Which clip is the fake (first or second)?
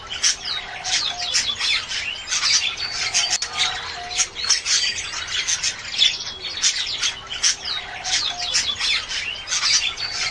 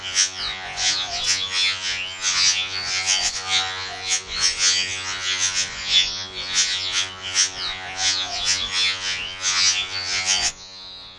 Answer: second